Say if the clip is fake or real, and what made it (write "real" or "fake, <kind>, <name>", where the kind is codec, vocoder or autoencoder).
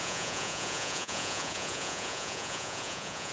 fake, vocoder, Vocos